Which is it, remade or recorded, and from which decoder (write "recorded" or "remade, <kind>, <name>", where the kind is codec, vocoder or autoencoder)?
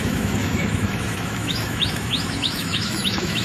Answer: remade, autoencoder, DAC-VAE